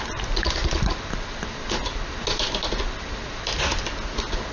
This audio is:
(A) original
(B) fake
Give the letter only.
A